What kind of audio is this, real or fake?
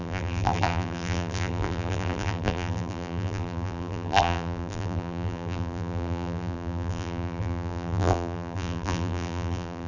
fake